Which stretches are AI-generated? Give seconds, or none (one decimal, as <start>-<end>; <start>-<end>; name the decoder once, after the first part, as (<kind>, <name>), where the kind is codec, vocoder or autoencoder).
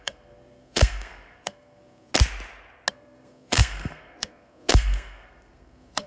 0.0-2.1 (codec, SNAC); 2.9-6.1